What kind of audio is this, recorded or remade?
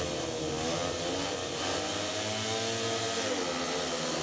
recorded